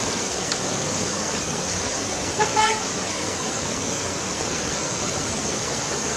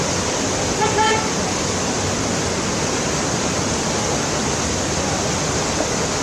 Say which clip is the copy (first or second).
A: first